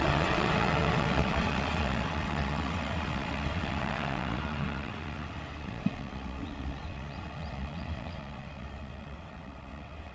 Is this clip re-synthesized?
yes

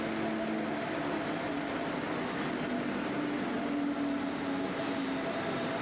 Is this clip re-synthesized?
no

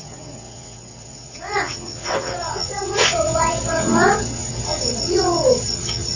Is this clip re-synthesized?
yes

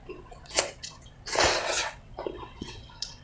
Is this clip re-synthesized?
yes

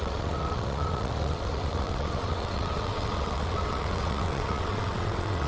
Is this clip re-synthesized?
yes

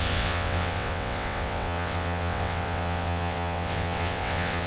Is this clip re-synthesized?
yes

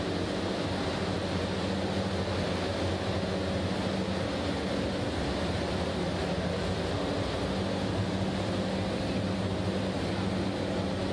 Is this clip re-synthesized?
no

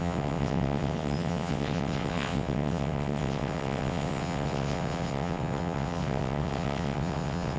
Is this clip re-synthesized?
yes